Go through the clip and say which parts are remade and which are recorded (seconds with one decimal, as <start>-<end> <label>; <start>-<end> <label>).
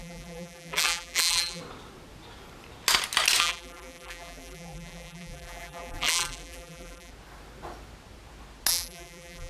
0.0-1.6 remade; 1.6-3.4 recorded; 3.4-7.1 remade; 7.1-8.7 recorded; 8.7-9.5 remade